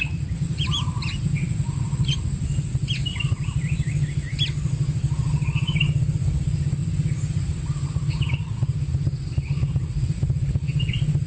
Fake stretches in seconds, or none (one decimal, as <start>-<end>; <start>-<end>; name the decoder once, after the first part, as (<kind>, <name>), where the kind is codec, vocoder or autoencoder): none